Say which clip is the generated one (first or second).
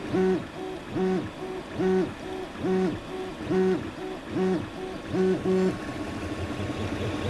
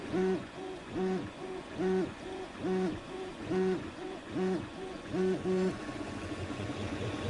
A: second